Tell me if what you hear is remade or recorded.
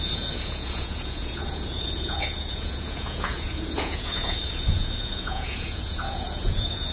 remade